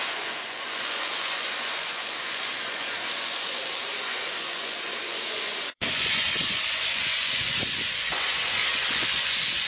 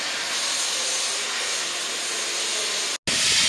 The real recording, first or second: second